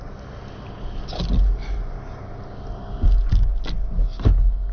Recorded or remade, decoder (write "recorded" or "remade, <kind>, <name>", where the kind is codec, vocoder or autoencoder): recorded